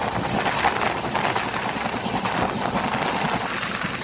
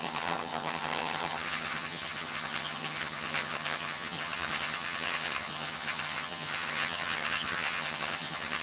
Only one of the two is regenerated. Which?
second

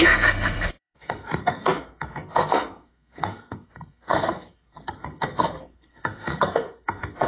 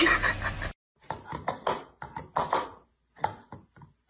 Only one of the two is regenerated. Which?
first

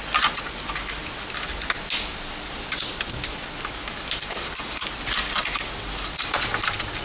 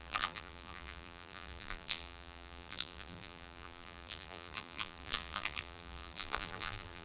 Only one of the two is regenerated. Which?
second